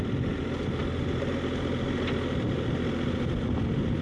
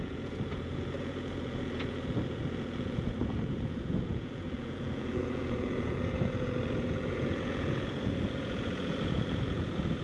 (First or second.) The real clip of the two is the first